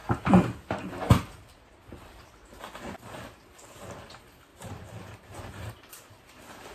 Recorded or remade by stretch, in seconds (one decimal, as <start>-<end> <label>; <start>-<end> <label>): 0.0-4.5 recorded; 4.5-6.2 remade; 6.2-6.7 recorded